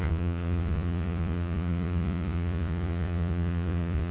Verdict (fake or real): fake